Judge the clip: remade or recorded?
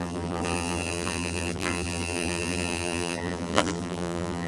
remade